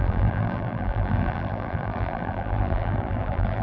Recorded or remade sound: remade